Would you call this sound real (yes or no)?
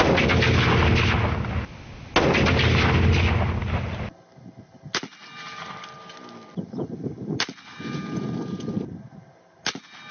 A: yes